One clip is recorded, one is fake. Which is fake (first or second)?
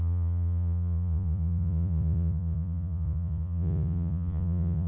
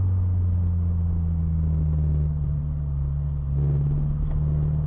first